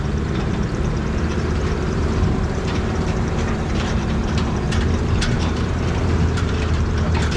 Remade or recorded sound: remade